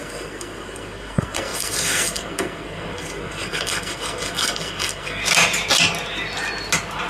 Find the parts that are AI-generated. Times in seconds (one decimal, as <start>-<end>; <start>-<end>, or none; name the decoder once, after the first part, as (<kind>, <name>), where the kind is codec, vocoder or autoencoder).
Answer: 0.0-5.2 (codec, SNAC)